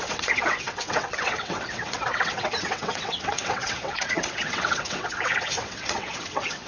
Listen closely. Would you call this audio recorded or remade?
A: remade